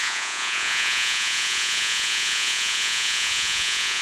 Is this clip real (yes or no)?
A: no